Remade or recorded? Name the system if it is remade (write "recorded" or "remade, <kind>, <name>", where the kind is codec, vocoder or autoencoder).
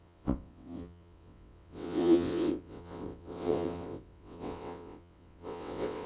remade, vocoder, WaveNeXt